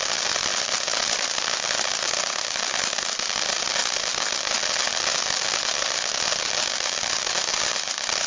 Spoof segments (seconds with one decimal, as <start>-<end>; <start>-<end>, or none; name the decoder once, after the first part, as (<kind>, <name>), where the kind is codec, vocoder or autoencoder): none